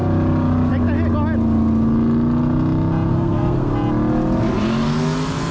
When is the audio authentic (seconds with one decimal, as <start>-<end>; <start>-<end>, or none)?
0.0-3.1; 3.7-5.5